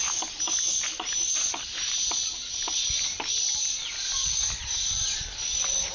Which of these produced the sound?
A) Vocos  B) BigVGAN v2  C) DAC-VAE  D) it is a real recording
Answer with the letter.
D